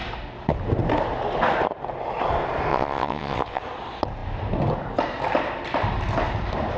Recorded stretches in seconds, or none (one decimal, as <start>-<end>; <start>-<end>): 0.0-2.7; 3.6-6.8